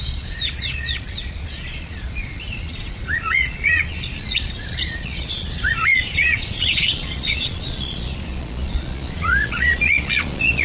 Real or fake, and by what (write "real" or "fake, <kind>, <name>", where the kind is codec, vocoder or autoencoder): fake, vocoder, Vocos